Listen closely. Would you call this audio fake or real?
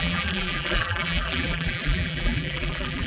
fake